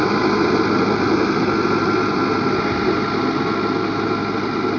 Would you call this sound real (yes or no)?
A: yes